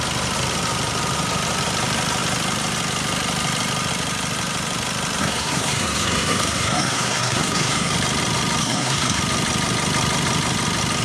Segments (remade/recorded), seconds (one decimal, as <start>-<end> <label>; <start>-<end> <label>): 0.0-5.2 recorded; 5.2-7.9 remade; 7.9-8.6 recorded; 8.6-9.2 remade; 9.2-11.0 recorded

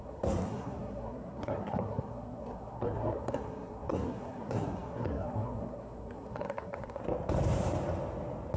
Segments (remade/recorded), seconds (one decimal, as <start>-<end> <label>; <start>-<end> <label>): 0.0-7.0 remade; 7.0-8.6 recorded